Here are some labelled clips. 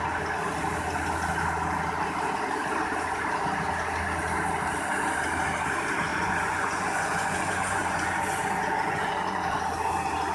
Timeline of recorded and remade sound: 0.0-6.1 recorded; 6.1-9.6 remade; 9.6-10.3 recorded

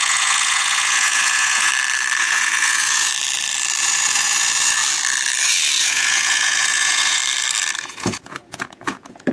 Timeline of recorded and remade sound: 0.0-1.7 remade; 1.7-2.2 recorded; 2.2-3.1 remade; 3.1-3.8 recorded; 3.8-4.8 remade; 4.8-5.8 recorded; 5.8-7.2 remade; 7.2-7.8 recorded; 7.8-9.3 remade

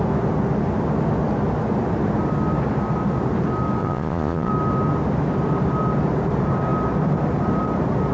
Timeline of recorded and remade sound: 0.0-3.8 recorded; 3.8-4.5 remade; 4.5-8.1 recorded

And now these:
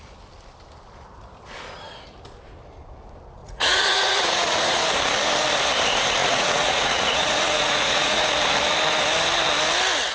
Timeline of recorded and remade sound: 0.0-3.4 recorded; 3.4-4.8 remade; 4.8-6.2 recorded; 6.2-8.3 remade; 8.3-10.1 recorded

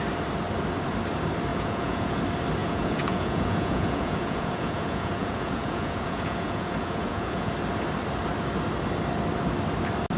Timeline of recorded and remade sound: 0.0-1.5 recorded; 1.5-2.2 remade; 2.2-2.6 recorded; 2.6-7.5 remade; 7.5-10.2 recorded